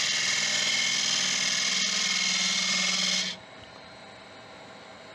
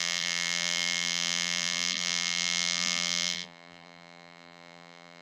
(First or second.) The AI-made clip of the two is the second